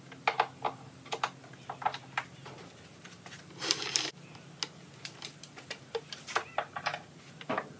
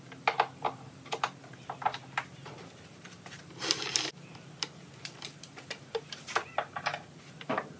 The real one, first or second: first